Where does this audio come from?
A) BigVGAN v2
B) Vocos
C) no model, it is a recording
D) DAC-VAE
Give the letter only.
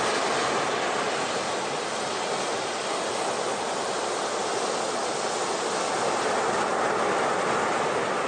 C